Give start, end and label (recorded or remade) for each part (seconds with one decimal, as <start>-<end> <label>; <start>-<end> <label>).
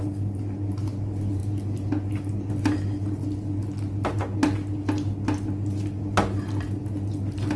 0.0-7.6 recorded